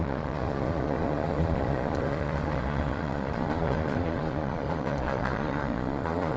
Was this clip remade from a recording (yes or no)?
yes